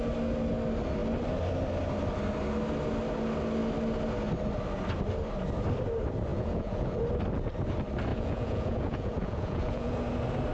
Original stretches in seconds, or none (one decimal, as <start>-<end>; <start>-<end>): 0.0-6.3; 7.0-8.1; 9.9-10.5